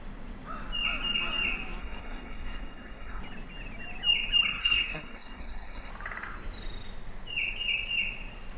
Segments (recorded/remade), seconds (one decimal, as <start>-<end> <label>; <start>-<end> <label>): 0.0-1.8 recorded; 1.8-3.2 remade; 3.2-4.6 recorded; 4.6-5.9 remade; 5.9-8.6 recorded